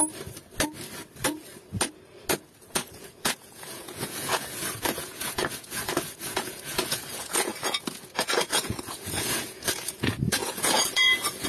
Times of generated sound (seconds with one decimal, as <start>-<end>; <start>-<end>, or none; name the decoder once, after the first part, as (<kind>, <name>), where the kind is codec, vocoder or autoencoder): 2.6-11.5 (vocoder, Vocos)

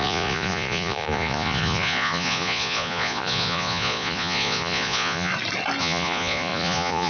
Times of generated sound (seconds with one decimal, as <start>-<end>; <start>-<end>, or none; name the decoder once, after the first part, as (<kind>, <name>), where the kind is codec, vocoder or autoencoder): 0.0-5.3 (vocoder, Vocos); 5.8-7.1

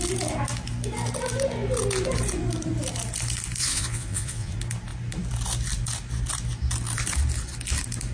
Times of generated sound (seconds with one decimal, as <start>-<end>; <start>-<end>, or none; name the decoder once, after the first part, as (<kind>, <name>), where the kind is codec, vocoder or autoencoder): 3.6-4.5 (vocoder, Vocos)